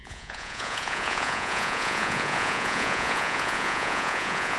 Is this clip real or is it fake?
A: fake